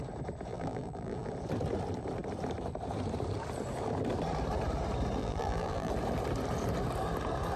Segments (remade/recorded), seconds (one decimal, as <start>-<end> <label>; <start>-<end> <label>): 0.0-0.5 recorded; 0.5-1.3 remade; 1.3-5.2 recorded; 5.2-5.9 remade; 5.9-7.6 recorded